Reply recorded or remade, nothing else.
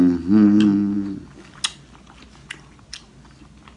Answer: recorded